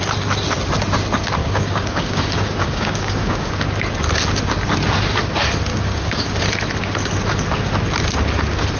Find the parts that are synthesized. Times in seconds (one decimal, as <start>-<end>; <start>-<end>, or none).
1.4-3.5; 5.7-6.4